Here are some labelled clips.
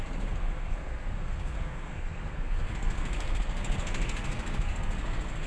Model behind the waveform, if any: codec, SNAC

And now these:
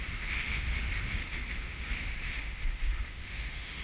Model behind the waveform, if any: autoencoder, DAC-VAE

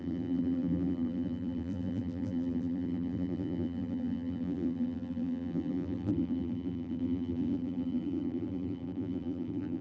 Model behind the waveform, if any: vocoder, BigVGAN v2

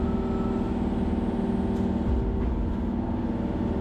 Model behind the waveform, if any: none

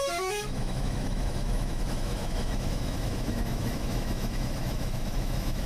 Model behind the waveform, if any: autoencoder, DAC-VAE